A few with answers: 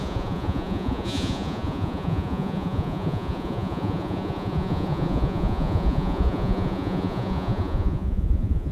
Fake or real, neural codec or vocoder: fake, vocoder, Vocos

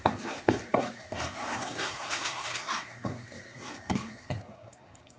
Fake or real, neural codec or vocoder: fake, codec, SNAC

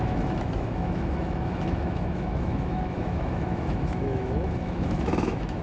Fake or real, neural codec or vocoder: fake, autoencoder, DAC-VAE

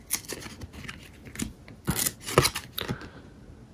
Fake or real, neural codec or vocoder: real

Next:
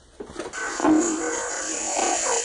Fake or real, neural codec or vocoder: real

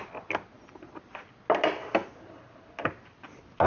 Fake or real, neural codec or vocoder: real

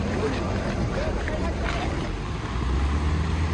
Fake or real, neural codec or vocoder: real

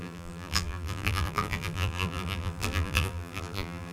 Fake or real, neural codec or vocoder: fake, vocoder, BigVGAN v2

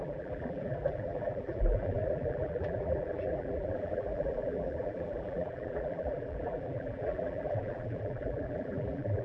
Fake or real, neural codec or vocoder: fake, vocoder, BigVGAN v2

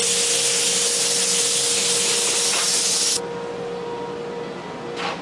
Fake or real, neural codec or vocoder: real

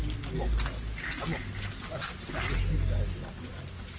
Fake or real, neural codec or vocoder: real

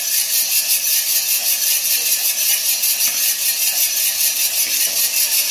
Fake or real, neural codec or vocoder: real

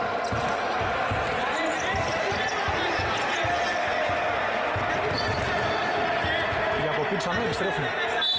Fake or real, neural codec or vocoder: real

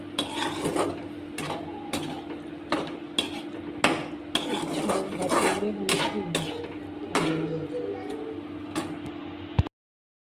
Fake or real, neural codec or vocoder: real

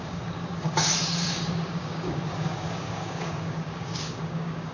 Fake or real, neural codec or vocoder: fake, codec, DAC